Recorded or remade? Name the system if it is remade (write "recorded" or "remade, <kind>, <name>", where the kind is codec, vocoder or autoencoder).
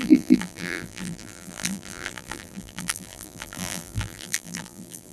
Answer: remade, vocoder, BigVGAN v2